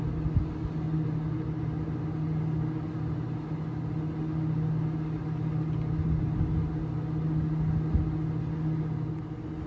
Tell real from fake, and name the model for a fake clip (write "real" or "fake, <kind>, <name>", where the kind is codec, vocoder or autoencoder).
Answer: real